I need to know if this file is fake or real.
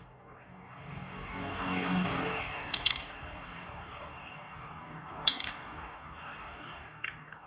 fake